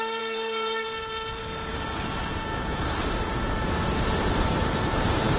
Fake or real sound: fake